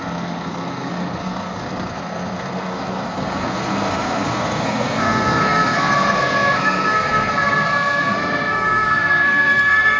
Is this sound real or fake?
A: fake